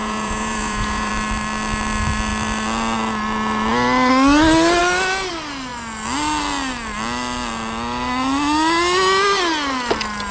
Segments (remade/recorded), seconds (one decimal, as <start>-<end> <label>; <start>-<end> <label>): 0.0-1.1 remade; 1.1-10.3 recorded